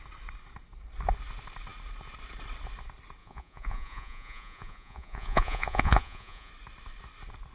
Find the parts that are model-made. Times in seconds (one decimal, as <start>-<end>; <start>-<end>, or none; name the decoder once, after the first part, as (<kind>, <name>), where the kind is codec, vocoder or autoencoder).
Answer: 3.2-6.5 (vocoder, Vocos)